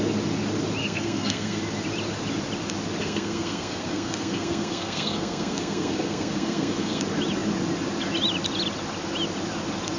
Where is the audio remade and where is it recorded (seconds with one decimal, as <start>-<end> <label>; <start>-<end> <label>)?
0.0-0.8 recorded; 0.8-1.6 remade; 1.6-3.0 recorded; 3.0-7.0 remade; 7.0-10.0 recorded

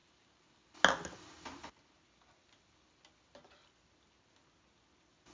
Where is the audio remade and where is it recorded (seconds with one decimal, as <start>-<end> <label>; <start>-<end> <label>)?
0.0-5.3 recorded

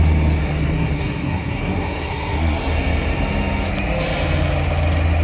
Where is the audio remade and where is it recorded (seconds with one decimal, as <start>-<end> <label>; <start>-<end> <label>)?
0.0-0.4 recorded; 0.4-2.6 remade; 2.6-5.2 recorded

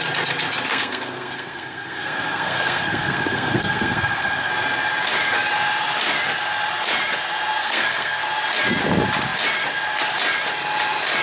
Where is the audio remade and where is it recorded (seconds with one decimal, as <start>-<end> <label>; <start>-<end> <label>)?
0.0-0.7 recorded; 0.7-4.5 remade; 4.5-7.6 recorded; 7.6-8.2 remade; 8.2-11.2 recorded